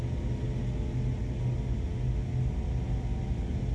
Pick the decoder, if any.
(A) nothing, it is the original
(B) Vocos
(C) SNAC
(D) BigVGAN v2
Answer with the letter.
A